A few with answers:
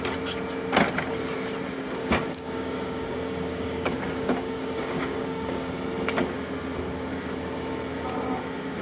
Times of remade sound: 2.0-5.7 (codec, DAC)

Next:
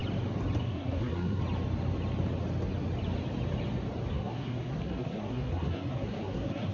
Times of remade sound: 0.6-1.4 (codec, SNAC); 4.1-6.7

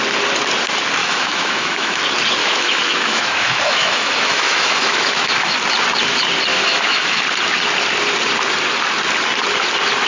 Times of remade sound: 1.0-2.0 (autoencoder, DAC-VAE); 2.4-5.6; 6.5-7.2